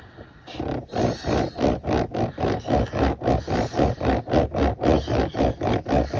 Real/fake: real